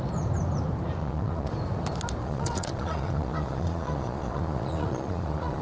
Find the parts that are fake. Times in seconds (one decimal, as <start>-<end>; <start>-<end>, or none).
1.0-1.5; 2.2-5.6